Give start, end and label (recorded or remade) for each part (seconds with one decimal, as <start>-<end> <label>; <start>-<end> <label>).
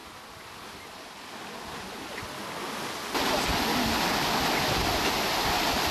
0.0-5.9 recorded